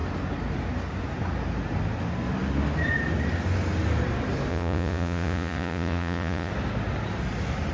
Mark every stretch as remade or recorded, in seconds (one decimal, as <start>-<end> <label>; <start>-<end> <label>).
0.0-4.5 recorded; 4.5-6.5 remade; 6.5-7.7 recorded